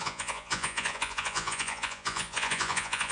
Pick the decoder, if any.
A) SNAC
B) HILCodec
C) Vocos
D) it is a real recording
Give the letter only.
C